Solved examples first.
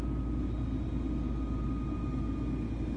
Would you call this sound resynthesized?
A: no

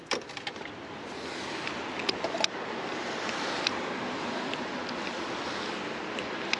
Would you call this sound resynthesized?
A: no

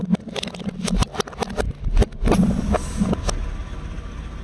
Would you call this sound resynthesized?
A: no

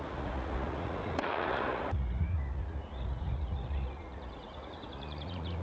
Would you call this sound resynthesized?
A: yes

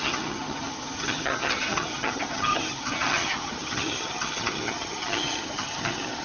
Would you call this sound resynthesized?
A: yes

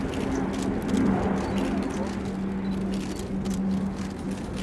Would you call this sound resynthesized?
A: no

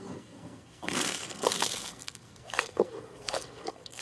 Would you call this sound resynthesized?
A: yes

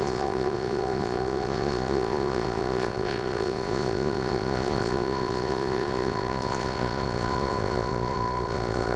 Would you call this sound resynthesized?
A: yes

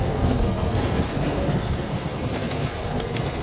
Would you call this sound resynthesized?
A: yes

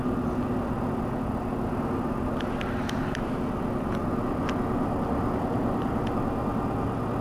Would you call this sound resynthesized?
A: no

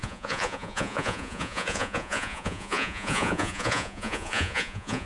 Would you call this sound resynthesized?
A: yes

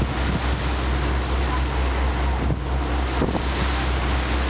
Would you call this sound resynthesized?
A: no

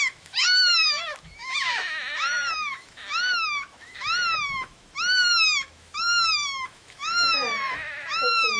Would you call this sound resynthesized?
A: yes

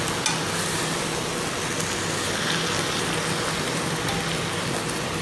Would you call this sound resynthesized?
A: no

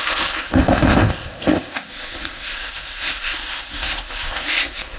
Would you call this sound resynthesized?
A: yes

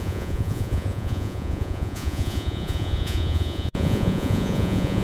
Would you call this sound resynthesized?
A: yes